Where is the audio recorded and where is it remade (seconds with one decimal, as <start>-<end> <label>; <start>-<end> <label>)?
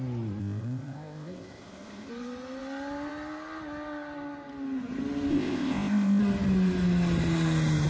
0.0-0.4 recorded; 0.4-2.1 remade; 2.1-5.3 recorded; 5.3-6.2 remade; 6.2-7.9 recorded